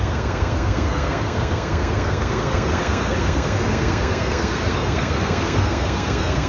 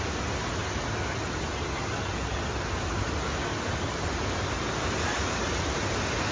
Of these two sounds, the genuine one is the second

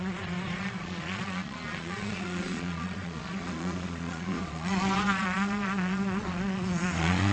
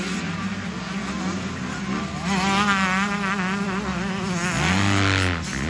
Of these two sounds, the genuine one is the second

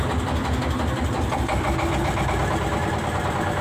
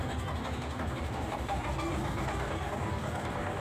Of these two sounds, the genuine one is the first